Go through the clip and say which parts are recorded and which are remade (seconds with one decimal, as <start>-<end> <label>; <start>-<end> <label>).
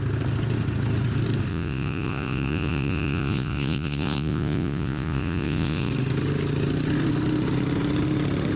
0.0-1.5 recorded; 1.5-5.9 remade; 5.9-8.6 recorded